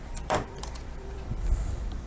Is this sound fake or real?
fake